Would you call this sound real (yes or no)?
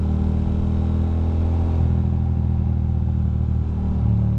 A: yes